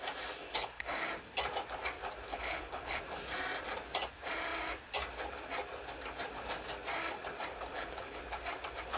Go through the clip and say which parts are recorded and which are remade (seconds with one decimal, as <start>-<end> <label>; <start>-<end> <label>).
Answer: 0.0-0.4 recorded; 0.4-1.1 remade; 1.1-2.3 recorded; 2.3-3.0 remade; 3.0-7.7 recorded; 7.7-8.2 remade; 8.2-9.0 recorded